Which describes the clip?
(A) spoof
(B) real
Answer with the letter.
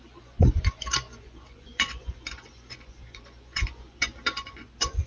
A